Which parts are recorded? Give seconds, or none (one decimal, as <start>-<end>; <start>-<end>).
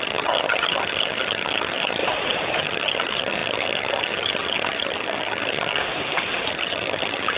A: 2.0-2.6; 5.8-6.5